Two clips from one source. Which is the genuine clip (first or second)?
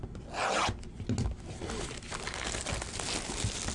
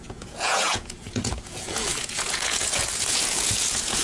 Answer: first